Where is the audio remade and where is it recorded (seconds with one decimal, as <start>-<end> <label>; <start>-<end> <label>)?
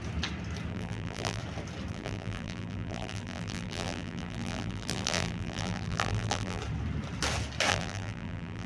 0.0-0.7 recorded; 0.7-1.4 remade; 1.4-1.9 recorded; 1.9-6.6 remade; 6.6-7.7 recorded; 7.7-8.7 remade